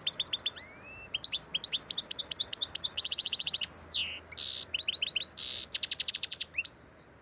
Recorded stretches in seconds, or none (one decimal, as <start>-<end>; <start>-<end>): 1.5-2.2; 4.0-6.1